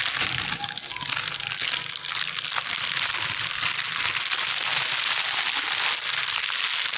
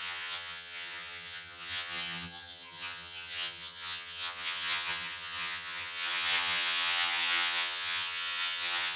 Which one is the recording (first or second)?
first